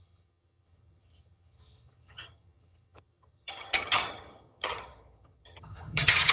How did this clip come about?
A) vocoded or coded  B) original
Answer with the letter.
A